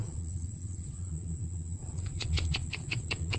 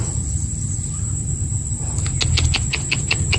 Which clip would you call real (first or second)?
second